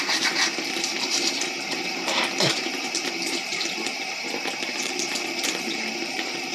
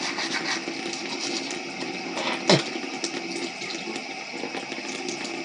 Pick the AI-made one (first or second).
first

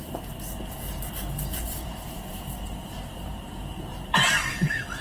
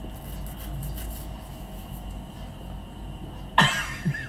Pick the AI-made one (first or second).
first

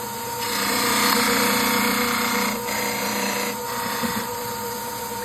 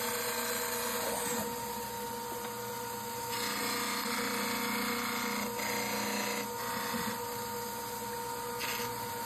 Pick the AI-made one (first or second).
first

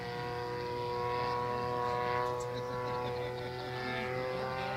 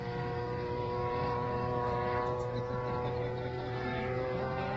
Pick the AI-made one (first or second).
second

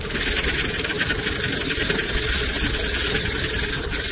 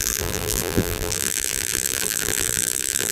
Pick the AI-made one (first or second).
second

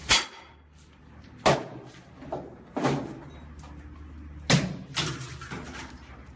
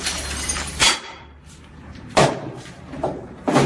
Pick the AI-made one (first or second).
second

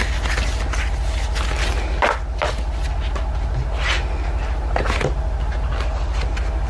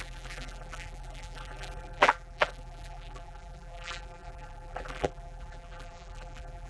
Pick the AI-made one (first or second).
second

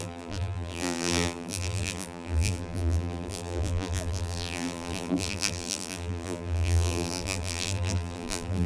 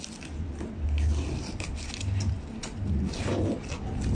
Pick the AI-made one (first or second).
first